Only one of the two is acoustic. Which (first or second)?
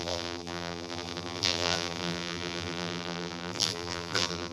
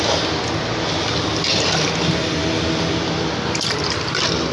second